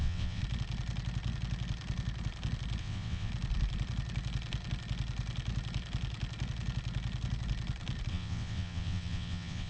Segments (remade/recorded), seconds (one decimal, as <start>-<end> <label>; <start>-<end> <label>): 0.0-0.4 remade; 0.4-2.8 recorded; 2.8-3.3 remade; 3.3-8.1 recorded; 8.1-9.7 remade